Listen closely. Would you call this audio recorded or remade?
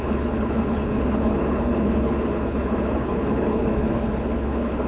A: remade